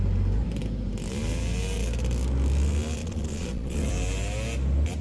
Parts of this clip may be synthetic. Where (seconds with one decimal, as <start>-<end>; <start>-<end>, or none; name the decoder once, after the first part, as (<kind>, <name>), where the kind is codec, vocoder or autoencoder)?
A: 3.0-3.9 (vocoder, Vocos)